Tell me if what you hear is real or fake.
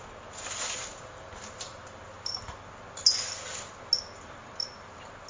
real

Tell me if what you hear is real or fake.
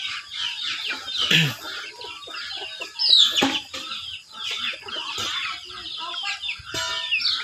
real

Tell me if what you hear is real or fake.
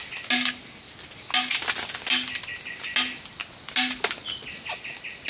real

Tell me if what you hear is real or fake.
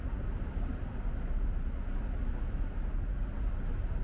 real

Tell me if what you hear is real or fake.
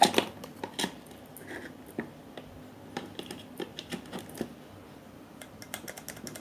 real